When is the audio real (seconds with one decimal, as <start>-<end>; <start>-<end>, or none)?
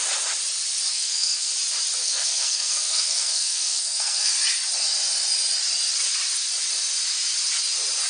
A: 0.0-0.9; 1.5-2.0; 4.3-8.1